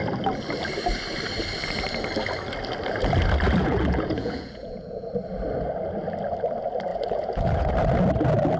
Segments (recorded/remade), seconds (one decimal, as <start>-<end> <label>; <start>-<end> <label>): 0.0-3.6 recorded; 3.6-5.1 remade; 5.1-6.9 recorded; 6.9-7.7 remade; 7.7-8.6 recorded

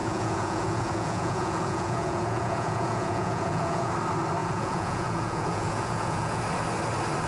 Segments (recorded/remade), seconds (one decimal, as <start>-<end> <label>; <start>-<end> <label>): 0.0-3.9 remade; 3.9-4.4 recorded; 4.4-6.4 remade; 6.4-7.3 recorded

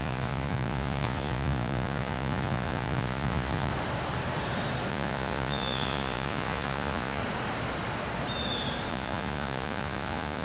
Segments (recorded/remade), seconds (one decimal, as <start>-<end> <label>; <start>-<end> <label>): 0.0-3.7 remade; 3.7-4.9 recorded; 4.9-7.2 remade; 7.2-8.9 recorded; 8.9-10.4 remade

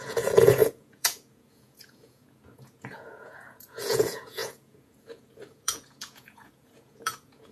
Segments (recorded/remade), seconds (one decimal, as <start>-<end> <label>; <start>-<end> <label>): 0.0-7.5 remade

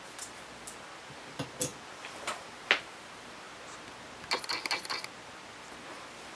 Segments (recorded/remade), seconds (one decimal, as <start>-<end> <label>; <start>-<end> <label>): 0.0-6.4 recorded

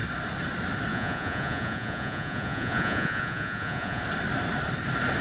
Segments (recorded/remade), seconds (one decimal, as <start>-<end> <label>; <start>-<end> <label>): 0.0-0.9 recorded; 0.9-4.0 remade; 4.0-5.2 recorded

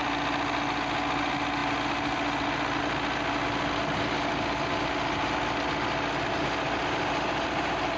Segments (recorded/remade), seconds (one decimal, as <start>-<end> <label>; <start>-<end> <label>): 0.0-8.0 recorded

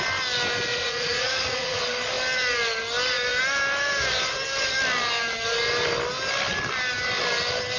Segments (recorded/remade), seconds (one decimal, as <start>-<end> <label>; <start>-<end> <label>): 0.0-0.7 recorded; 0.7-1.8 remade; 1.8-7.8 recorded